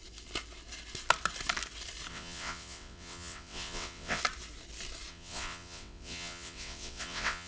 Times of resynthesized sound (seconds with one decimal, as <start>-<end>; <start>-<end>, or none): 2.1-4.2; 5.1-7.5